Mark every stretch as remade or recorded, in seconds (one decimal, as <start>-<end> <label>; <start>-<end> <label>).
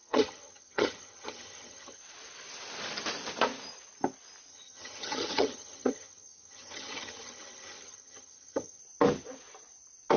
0.0-2.0 remade; 2.0-4.5 recorded; 4.5-8.8 remade; 8.8-10.2 recorded